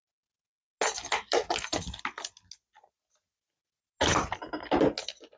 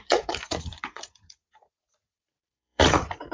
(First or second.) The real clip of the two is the first